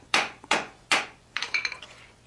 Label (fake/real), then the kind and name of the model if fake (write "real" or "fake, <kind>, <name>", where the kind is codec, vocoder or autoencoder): fake, vocoder, Vocos